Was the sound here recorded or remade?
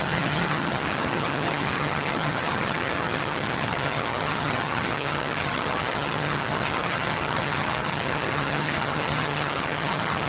remade